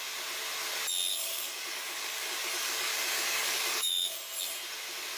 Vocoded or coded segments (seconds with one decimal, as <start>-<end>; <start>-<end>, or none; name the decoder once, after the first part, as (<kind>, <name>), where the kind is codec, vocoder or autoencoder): 1.1-4.2 (codec, DAC)